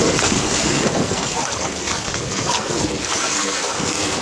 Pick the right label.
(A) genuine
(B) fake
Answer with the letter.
B